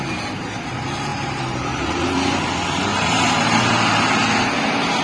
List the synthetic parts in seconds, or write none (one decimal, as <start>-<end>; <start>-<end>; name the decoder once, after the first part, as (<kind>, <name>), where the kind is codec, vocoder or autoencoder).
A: 1.1-2.2 (vocoder, BigVGAN v2); 2.9-3.6